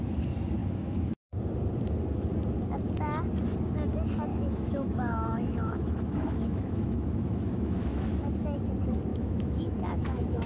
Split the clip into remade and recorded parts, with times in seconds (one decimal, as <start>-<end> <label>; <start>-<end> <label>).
0.0-0.6 recorded; 0.6-1.2 remade; 1.2-4.3 recorded; 4.3-8.3 remade; 8.3-9.1 recorded; 9.1-10.5 remade